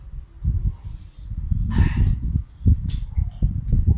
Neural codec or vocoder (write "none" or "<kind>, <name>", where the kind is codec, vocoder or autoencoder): none